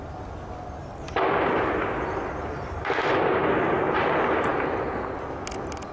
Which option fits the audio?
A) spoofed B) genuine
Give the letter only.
B